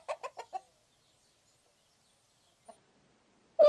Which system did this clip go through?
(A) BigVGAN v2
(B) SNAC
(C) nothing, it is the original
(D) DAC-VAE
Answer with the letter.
C